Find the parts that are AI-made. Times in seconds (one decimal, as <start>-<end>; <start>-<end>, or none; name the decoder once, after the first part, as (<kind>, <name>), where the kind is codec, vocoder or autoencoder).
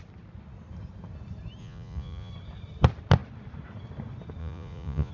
1.6-2.3 (vocoder, Vocos); 4.4-5.1